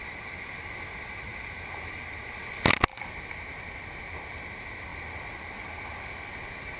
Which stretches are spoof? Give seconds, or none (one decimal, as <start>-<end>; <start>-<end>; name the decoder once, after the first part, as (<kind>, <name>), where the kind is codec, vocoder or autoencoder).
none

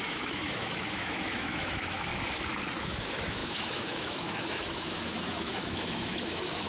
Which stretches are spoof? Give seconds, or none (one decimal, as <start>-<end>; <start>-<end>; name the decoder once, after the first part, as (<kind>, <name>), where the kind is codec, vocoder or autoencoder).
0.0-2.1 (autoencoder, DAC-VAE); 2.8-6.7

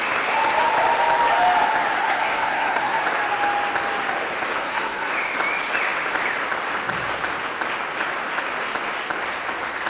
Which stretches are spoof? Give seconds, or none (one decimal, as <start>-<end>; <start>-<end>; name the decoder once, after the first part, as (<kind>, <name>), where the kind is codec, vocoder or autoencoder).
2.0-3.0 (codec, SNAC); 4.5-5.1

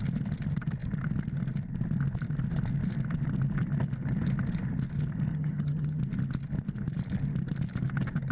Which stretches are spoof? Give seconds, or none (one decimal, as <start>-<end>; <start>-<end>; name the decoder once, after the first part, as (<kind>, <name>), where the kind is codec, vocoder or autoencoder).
5.3-6.0 (vocoder, HiFi-GAN)

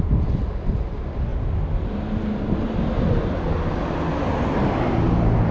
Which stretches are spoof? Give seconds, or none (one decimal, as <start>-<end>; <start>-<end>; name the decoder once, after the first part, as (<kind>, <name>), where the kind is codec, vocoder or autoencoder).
none

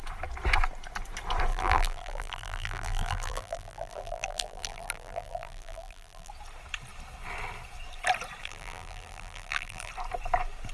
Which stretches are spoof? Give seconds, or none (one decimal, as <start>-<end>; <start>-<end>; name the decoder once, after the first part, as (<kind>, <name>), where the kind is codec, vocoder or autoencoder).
1.5-6.3 (vocoder, BigVGAN v2); 8.4-9.9

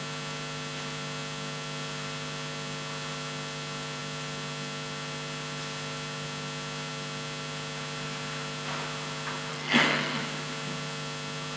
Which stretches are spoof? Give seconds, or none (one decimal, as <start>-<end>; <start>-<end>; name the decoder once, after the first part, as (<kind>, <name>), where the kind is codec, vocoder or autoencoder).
9.5-10.2 (codec, SNAC)

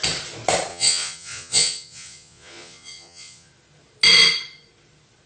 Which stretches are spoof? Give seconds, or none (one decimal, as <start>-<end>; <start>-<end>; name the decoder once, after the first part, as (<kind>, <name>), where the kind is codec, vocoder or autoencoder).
0.7-3.5 (vocoder, Vocos)